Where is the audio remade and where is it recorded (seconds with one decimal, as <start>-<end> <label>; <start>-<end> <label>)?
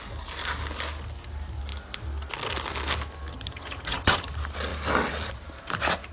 0.0-3.3 recorded; 3.3-4.3 remade; 4.3-6.1 recorded